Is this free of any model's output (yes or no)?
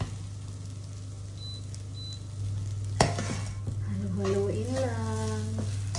yes